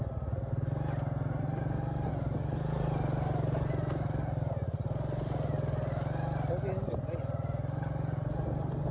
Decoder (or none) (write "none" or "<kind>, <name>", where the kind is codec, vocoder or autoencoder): none